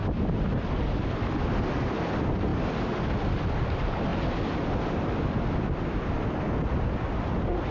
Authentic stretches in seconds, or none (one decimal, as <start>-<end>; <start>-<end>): 0.0-2.5; 3.3-7.7